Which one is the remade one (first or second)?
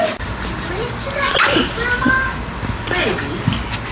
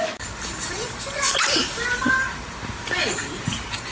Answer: second